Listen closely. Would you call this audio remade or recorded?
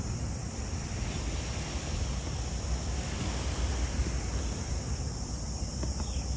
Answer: recorded